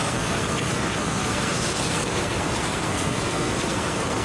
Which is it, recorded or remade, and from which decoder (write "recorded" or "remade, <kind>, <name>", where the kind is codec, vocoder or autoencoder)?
remade, codec, SNAC